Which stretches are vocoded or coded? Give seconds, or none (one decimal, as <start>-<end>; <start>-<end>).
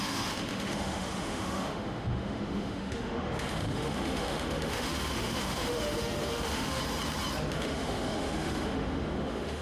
0.0-6.8; 7.5-9.6